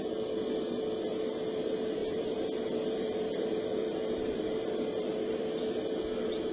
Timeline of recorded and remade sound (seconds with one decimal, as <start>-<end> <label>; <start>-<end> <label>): 0.0-2.0 recorded; 2.0-5.9 remade; 5.9-6.5 recorded